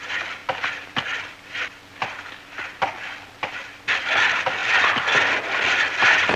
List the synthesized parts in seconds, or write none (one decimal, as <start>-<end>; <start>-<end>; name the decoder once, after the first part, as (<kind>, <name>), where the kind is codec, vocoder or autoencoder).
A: none